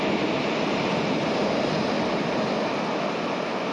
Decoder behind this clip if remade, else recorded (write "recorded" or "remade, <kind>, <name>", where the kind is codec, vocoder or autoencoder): recorded